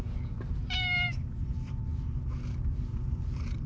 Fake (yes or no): yes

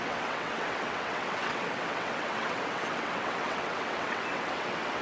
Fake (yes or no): yes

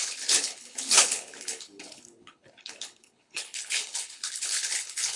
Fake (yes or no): yes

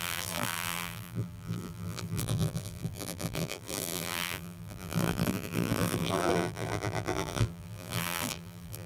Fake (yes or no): yes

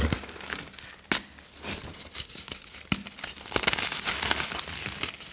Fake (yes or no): no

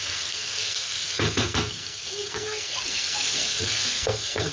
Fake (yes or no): yes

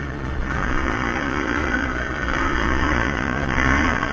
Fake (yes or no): yes